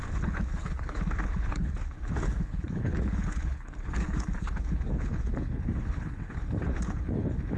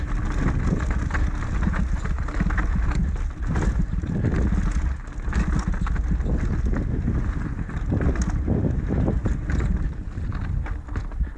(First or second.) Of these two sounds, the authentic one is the second